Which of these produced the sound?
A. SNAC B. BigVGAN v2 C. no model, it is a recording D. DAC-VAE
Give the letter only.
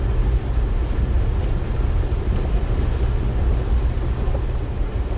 C